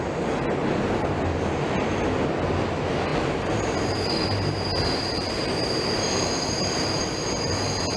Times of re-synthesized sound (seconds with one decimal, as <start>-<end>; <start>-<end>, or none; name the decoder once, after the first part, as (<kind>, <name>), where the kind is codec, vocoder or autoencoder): 0.6-1.2 (vocoder, BigVGAN v2); 3.1-7.5